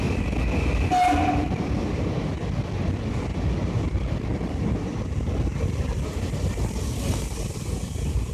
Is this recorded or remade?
recorded